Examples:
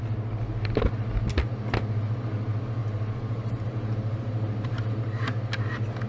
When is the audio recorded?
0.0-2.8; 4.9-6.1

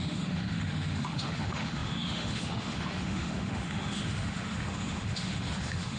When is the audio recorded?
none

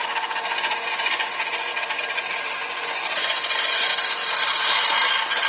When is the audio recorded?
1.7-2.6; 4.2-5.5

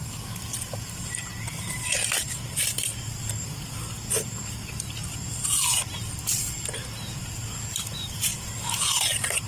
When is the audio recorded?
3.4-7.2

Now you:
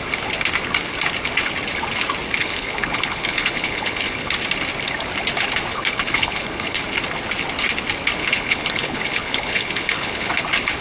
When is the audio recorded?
0.0-2.4; 4.3-5.7; 6.8-8.2; 10.3-10.8

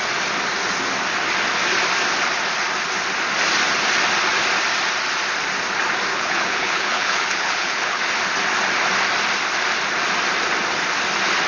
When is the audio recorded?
0.0-6.1; 8.0-11.5

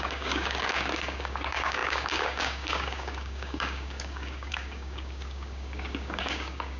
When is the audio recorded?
none